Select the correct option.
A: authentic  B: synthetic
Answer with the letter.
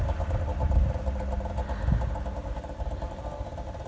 A